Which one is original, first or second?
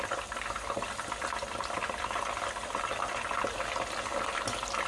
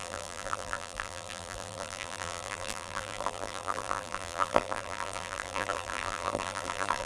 first